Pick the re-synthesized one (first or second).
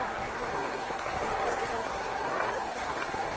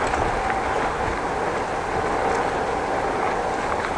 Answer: first